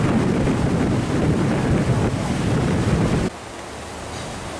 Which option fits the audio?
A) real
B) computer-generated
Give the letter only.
A